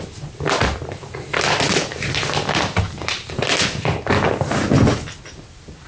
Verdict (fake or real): real